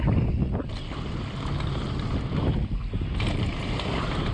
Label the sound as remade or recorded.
recorded